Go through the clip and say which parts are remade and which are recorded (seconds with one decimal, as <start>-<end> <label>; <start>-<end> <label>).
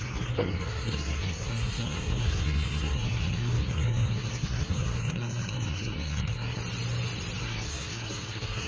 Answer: 0.0-6.6 remade; 6.6-7.4 recorded; 7.4-8.7 remade